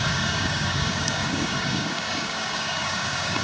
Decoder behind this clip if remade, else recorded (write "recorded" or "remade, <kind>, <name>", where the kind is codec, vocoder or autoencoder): remade, codec, DAC